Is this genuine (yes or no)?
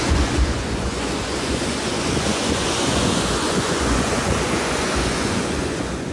no